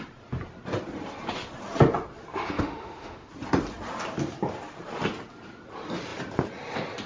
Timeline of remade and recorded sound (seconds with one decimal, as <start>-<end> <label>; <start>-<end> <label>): 0.0-2.3 recorded; 2.3-3.3 remade; 3.3-7.1 recorded